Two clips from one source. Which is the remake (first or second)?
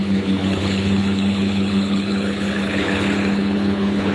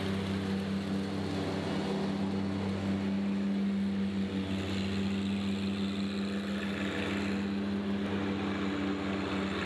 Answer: first